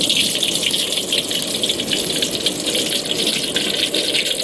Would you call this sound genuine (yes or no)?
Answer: yes